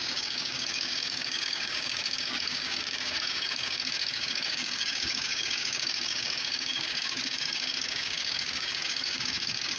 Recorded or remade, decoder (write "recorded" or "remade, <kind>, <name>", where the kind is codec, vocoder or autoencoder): remade, codec, DAC